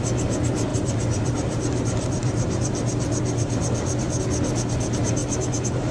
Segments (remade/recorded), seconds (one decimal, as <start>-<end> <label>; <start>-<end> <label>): 0.0-0.7 recorded; 0.7-4.2 remade; 4.2-5.2 recorded; 5.2-5.9 remade